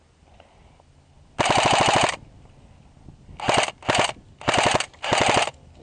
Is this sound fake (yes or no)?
no